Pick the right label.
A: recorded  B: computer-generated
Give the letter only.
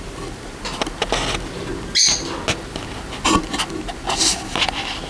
A